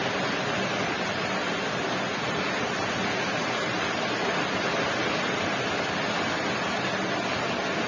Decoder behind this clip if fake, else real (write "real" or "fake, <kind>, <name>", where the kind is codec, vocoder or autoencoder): real